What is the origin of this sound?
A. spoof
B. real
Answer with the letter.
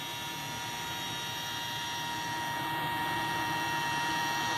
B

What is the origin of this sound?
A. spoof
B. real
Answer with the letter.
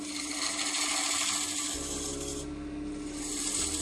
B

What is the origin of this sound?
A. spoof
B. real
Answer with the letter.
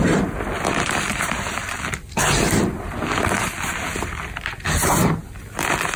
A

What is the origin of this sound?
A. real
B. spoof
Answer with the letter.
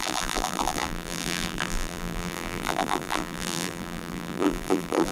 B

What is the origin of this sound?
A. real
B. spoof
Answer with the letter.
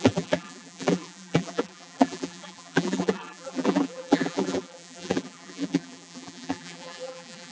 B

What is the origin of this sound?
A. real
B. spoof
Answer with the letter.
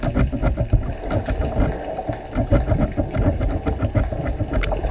A